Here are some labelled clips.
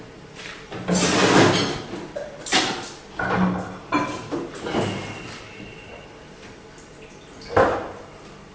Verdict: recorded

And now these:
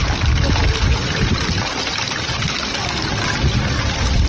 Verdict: recorded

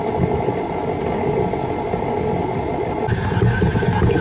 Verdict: recorded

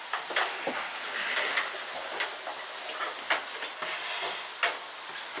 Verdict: recorded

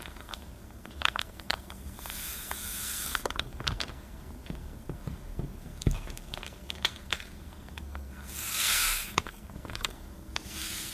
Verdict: remade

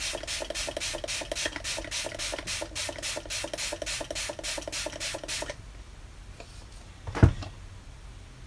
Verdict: recorded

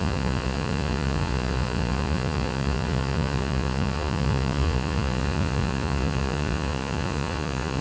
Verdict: remade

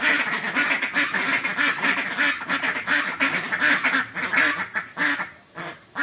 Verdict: recorded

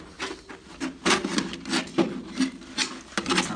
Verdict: recorded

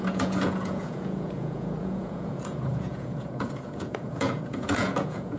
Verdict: remade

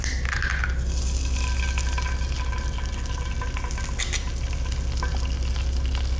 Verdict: recorded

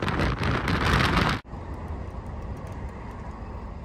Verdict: recorded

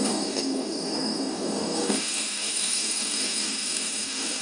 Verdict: remade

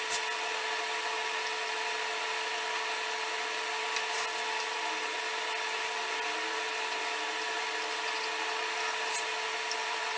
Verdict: recorded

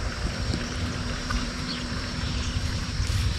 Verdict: remade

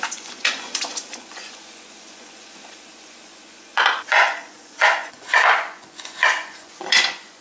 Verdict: remade